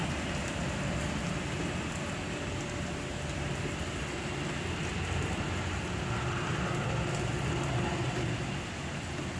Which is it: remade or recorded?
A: recorded